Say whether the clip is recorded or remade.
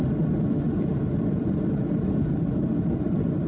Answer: recorded